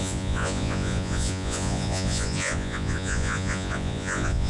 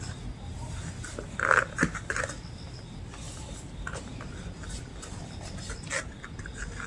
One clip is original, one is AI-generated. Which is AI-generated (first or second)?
first